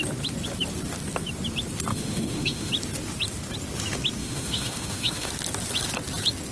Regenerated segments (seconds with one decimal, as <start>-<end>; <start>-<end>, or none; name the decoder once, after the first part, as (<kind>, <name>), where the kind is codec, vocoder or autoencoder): 1.9-2.7 (autoencoder, DAC-VAE); 4.2-5.3